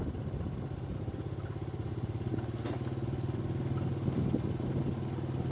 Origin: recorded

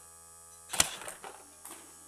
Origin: recorded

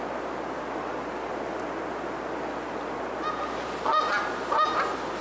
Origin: recorded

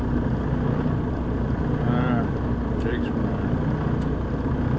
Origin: recorded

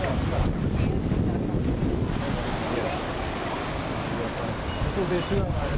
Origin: recorded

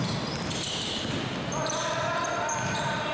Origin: recorded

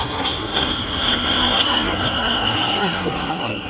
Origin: remade